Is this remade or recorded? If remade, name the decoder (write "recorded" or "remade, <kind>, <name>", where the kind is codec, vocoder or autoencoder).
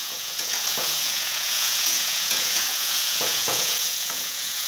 remade, vocoder, Vocos